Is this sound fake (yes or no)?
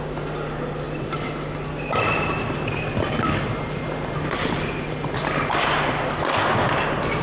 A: no